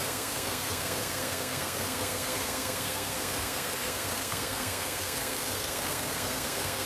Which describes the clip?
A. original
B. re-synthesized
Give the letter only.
B